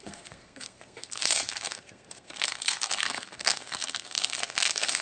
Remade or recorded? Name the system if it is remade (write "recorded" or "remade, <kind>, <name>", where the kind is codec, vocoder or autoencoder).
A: remade, codec, SNAC